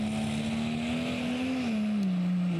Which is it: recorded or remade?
recorded